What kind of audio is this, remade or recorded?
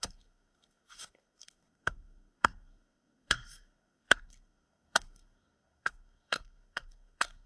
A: remade